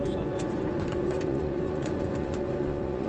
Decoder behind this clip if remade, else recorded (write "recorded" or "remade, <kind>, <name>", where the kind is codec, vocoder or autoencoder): remade, vocoder, Vocos